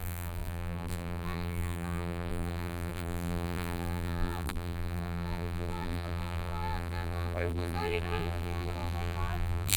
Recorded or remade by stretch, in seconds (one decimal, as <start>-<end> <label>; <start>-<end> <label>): 0.0-9.8 remade